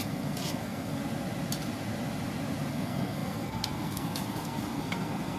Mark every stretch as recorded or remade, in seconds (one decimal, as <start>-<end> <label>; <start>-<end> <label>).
0.0-1.0 remade; 1.0-2.7 recorded; 2.7-5.4 remade